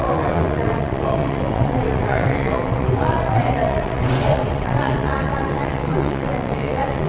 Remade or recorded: remade